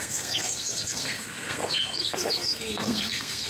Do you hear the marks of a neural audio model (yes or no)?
yes